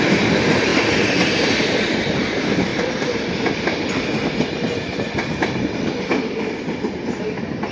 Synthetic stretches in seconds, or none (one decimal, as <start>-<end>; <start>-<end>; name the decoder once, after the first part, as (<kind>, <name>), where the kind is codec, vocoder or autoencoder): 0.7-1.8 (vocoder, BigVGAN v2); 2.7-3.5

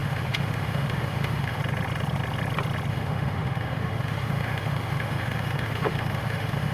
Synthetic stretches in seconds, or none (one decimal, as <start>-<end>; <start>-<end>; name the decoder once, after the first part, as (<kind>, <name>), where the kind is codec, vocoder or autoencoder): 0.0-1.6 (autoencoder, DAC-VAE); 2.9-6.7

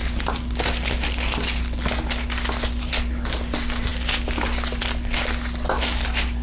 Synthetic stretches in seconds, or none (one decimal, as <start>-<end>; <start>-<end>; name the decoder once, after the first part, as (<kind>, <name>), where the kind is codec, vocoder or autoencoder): none

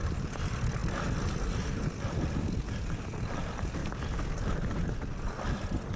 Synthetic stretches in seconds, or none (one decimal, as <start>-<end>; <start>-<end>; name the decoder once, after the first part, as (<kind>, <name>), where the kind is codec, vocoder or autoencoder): none

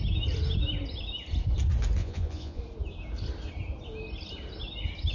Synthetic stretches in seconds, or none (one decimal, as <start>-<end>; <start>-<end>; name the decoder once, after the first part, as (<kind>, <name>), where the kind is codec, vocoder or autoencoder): 2.0-2.6 (vocoder, Vocos)